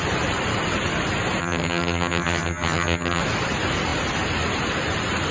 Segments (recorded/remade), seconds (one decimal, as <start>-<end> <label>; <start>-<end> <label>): 0.0-1.4 recorded; 1.4-3.2 remade; 3.2-5.3 recorded